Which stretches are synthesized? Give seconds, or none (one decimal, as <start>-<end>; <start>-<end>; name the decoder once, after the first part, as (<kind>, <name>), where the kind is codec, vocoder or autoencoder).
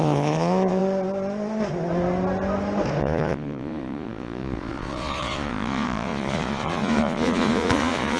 0.0-0.8 (vocoder, Vocos); 3.0-8.2